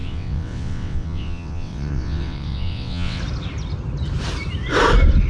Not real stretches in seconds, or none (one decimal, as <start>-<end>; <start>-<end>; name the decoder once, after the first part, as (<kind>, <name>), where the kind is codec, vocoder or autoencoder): 0.0-3.2 (vocoder, WaveNeXt)